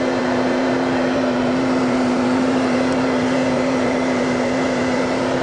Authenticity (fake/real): fake